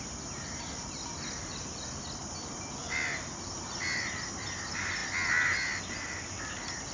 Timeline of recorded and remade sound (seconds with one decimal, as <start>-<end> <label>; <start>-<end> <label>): 0.0-6.9 recorded